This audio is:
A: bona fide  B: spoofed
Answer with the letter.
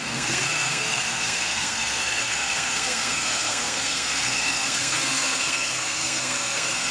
B